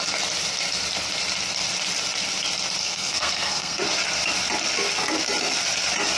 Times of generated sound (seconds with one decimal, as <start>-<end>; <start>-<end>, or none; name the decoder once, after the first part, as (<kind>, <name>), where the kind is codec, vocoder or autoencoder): 2.8-3.8 (codec, SNAC)

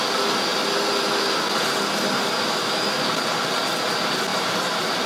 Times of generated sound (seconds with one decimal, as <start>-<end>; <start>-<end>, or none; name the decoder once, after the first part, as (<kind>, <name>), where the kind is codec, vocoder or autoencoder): 4.3-5.1 (vocoder, BigVGAN v2)

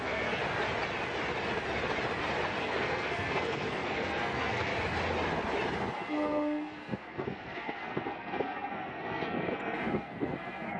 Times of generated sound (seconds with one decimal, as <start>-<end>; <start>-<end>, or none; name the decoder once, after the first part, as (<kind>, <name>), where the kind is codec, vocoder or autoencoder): 0.0-0.4 (codec, SNAC); 2.6-4.7; 6.0-10.8